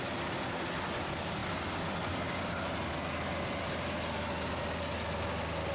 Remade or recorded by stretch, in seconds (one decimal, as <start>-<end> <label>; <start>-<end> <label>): 0.0-5.7 recorded